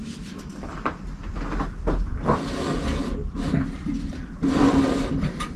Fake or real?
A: fake